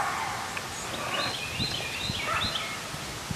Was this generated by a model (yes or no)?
no